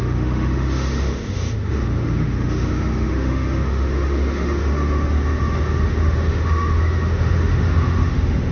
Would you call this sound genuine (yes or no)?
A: no